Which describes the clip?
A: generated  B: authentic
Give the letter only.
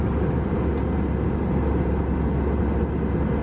B